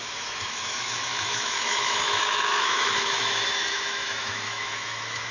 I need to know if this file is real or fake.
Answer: fake